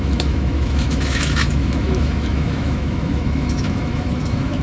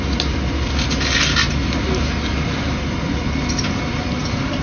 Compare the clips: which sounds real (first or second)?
second